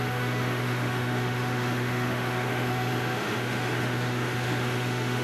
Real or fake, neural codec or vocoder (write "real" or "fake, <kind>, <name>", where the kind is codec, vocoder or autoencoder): fake, autoencoder, DAC-VAE